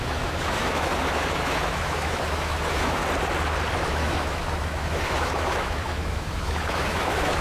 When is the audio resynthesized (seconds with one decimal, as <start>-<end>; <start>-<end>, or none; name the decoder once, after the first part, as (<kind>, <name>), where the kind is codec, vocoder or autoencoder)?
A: 0.0-3.0 (autoencoder, DAC-VAE); 3.9-7.4